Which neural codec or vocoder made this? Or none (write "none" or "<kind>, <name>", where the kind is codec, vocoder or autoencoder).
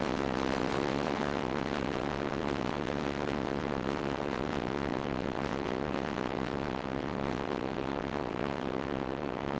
vocoder, WaveNeXt